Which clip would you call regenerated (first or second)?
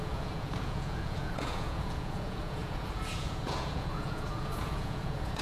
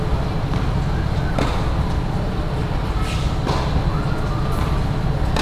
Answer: first